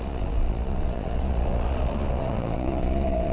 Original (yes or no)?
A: no